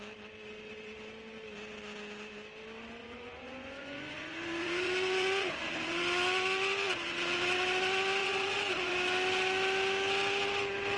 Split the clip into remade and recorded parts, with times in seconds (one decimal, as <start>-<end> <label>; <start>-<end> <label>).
0.0-3.0 recorded; 3.0-6.0 remade; 6.0-8.2 recorded; 8.2-8.9 remade; 8.9-11.0 recorded